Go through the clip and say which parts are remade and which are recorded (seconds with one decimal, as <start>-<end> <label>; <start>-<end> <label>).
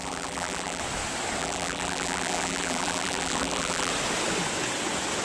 0.0-0.8 remade; 0.8-1.4 recorded; 1.4-3.9 remade; 3.9-5.2 recorded